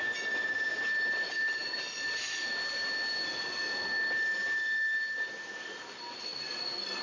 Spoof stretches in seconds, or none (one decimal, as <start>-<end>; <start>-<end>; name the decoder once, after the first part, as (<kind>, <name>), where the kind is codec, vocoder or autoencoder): none